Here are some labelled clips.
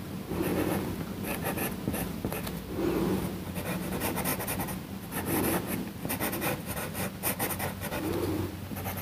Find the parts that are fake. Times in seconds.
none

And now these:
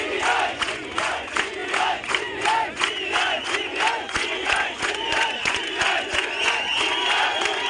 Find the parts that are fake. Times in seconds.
0.0-7.7 (vocoder, Vocos)

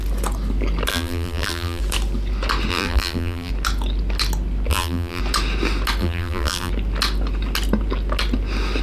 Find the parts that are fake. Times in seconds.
0.9-1.8 (vocoder, BigVGAN v2); 2.7-3.5; 4.7-5.2; 6.0-6.7

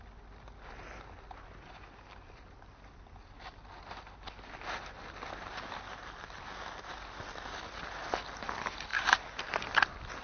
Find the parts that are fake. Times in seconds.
none

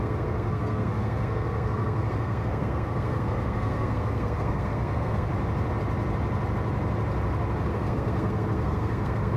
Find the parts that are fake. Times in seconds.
0.0-5.3 (codec, SNAC); 7.7-9.4

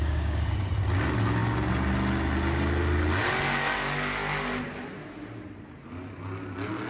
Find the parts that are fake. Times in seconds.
0.0-0.7 (codec, DAC)

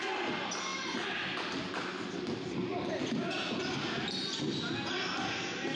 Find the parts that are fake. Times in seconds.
none